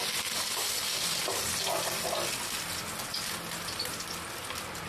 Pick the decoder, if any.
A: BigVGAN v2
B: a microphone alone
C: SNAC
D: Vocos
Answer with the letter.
B